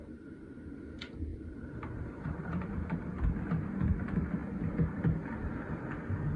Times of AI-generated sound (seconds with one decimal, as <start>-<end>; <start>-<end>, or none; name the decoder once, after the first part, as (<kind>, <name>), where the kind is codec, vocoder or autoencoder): 1.3-3.1 (vocoder, BigVGAN v2)